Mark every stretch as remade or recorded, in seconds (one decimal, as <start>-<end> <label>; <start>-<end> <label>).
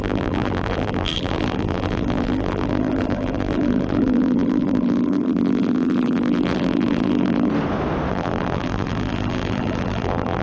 0.0-7.5 remade; 7.5-8.1 recorded; 8.1-10.4 remade